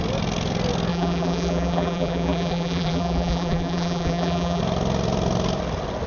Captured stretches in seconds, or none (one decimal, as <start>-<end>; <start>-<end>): 0.0-0.9; 4.6-6.1